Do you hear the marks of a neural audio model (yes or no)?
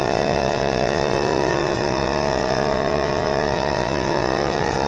yes